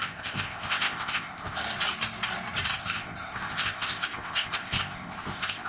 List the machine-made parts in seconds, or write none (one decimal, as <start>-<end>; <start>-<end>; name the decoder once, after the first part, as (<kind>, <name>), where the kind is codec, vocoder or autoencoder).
0.0-1.6 (codec, ZipCodec); 2.8-5.7